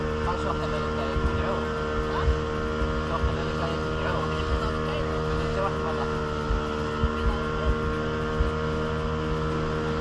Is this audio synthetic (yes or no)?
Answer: no